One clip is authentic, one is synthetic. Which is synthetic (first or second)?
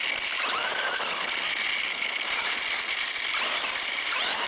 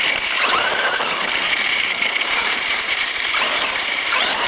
second